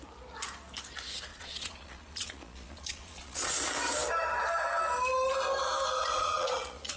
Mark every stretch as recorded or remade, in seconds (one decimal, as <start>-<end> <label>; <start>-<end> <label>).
0.0-1.3 recorded; 1.3-3.5 remade; 3.5-6.0 recorded; 6.0-7.0 remade